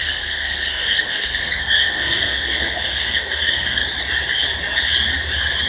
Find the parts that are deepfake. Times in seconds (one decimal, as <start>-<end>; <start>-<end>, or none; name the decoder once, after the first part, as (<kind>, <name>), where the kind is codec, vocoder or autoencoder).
0.0-3.8 (codec, SNAC)